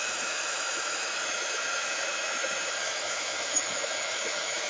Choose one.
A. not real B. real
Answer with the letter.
A